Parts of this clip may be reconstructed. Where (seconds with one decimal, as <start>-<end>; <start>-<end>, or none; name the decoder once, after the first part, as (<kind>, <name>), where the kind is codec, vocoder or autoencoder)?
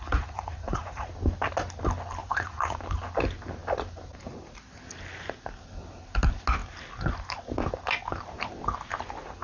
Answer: 0.0-1.1 (vocoder, Vocos); 2.2-2.8